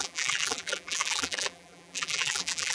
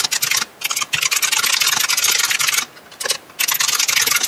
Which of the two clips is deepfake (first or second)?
first